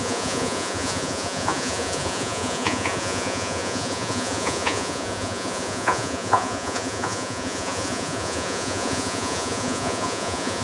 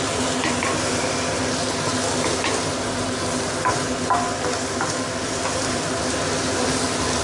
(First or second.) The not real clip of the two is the first